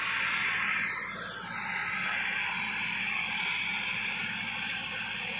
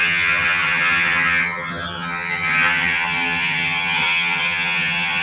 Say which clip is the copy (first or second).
second